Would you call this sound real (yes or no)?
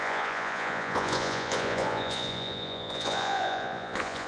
no